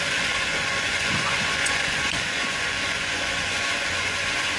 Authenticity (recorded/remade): remade